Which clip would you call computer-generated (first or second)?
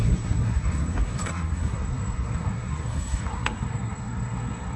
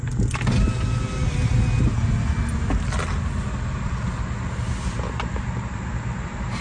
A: first